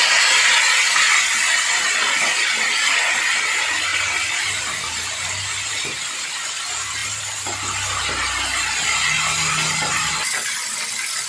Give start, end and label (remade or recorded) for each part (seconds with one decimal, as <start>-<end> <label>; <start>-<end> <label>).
0.0-11.3 recorded